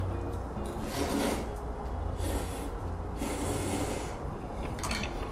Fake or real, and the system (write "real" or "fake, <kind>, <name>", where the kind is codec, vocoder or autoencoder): real